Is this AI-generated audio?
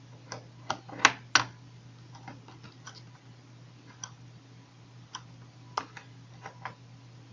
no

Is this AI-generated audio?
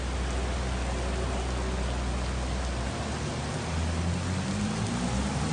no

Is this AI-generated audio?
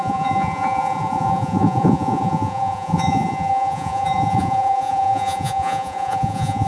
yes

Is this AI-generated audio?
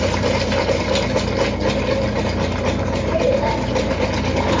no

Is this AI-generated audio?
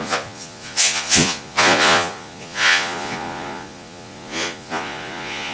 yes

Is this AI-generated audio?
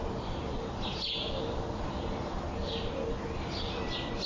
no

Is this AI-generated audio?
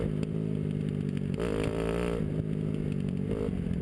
no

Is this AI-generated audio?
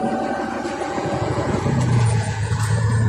yes